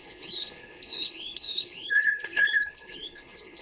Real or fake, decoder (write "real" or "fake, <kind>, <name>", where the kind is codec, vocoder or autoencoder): fake, codec, HILCodec